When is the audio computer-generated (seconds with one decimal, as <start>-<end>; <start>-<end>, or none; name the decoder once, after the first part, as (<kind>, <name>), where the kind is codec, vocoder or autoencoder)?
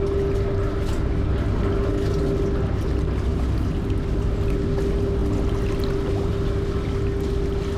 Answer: none